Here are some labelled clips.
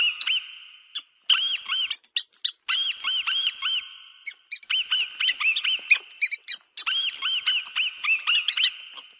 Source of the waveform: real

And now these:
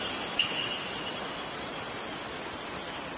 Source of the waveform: real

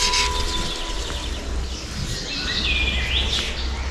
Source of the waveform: real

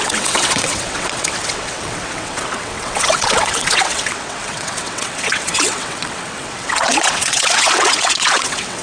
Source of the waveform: fake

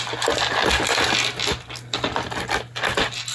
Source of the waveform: real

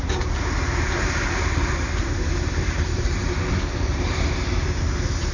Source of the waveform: fake